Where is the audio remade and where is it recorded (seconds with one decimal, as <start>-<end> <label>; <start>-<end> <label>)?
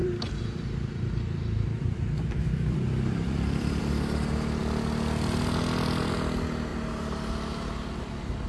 0.0-3.8 remade; 3.8-8.5 recorded